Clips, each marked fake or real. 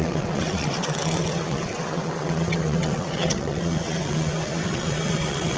fake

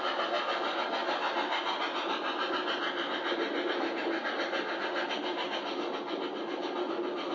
real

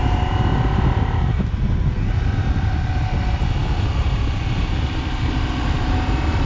real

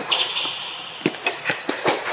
real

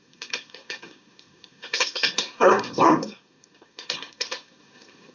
fake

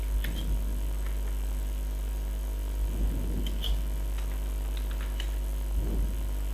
real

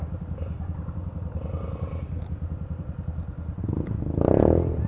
real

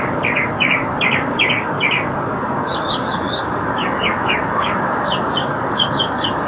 fake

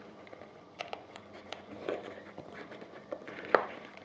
fake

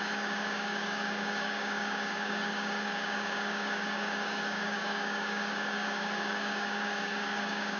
fake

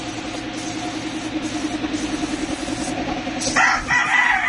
real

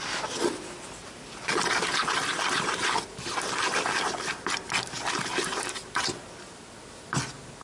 real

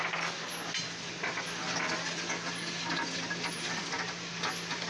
real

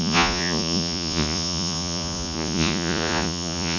fake